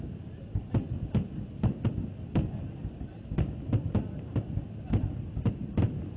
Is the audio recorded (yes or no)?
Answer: yes